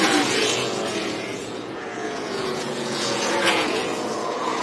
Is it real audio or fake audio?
fake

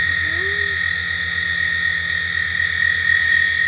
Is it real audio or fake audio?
real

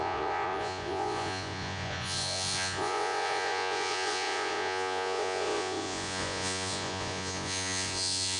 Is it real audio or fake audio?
fake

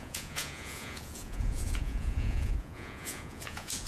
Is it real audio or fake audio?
fake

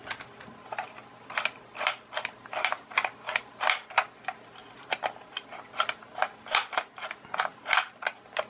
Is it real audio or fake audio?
real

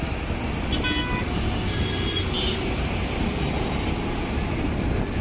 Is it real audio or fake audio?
real